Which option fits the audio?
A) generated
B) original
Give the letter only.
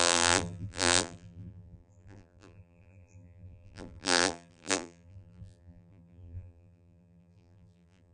A